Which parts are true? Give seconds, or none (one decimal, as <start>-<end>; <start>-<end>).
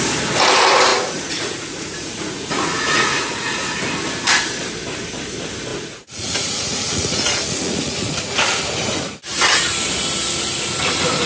0.0-0.9; 3.7-5.7; 8.6-11.3